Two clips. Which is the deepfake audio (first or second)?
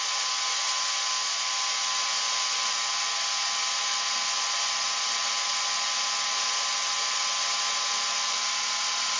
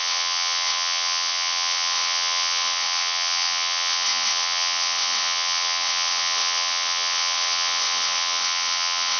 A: second